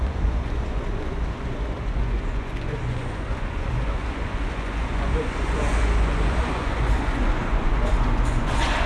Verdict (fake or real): fake